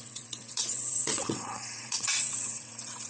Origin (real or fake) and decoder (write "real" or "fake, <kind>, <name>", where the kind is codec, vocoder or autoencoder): fake, vocoder, WaveNeXt